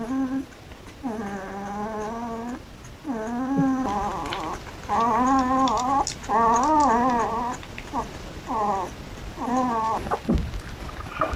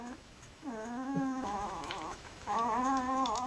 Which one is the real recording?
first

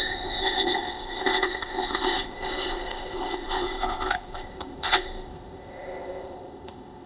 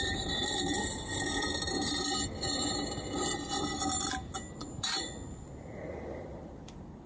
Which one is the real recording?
second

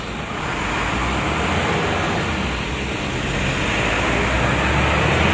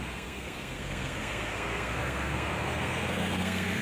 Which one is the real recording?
first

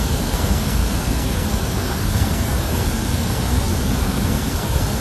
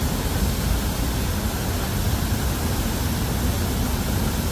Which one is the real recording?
second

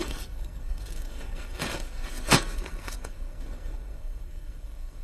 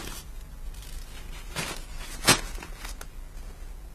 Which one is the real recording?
second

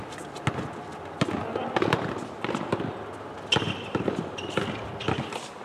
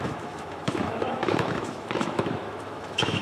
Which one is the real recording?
first